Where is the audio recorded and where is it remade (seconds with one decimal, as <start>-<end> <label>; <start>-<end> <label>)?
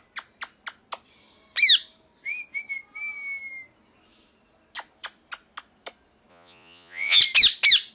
0.0-6.3 recorded; 6.3-7.2 remade; 7.2-7.9 recorded